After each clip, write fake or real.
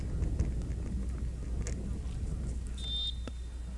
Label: real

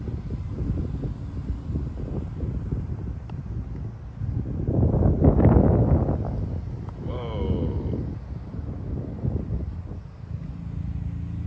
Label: real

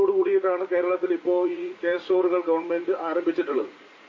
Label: fake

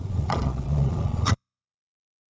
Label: fake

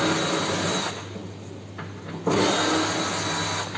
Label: real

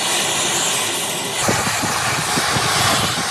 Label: real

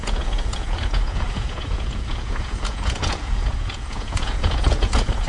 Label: fake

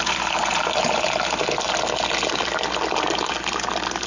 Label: real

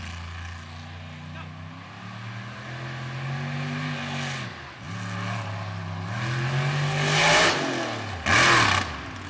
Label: real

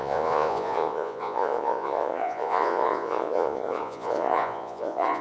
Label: fake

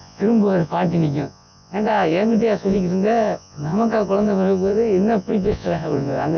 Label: fake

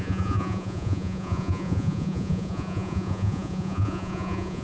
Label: fake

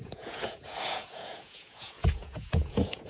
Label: fake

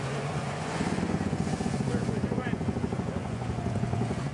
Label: fake